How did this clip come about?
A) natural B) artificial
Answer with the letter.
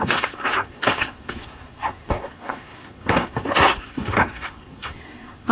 B